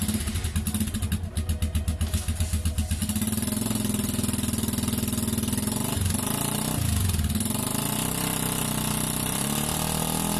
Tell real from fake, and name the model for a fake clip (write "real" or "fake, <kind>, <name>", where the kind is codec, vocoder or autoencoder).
real